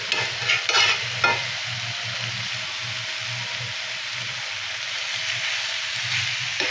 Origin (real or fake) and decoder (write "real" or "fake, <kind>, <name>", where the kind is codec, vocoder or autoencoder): real